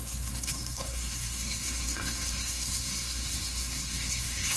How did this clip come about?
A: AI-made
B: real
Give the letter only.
A